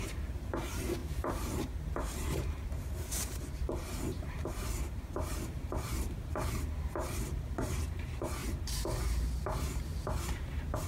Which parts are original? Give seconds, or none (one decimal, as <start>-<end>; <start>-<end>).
4.4-4.9; 8.4-10.3